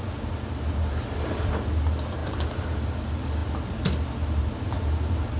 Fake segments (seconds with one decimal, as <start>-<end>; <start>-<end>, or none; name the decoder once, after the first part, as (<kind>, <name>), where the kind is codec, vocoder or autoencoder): none